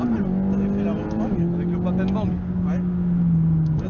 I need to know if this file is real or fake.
real